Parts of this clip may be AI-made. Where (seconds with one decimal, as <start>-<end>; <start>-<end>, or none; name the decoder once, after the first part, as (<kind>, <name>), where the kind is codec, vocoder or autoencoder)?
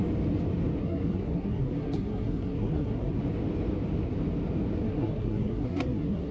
0.8-3.2 (codec, SNAC); 4.8-6.3